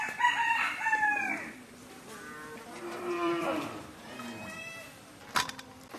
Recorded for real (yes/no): no